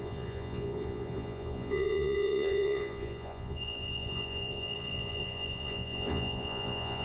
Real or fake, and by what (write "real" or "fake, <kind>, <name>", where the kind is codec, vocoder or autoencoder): fake, vocoder, Vocos